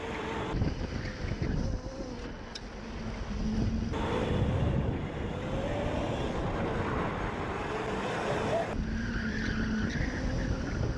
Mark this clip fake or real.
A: real